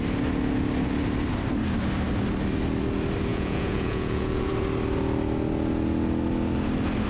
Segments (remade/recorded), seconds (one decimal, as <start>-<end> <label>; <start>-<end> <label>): 0.0-3.3 recorded; 3.3-4.5 remade; 4.5-7.1 recorded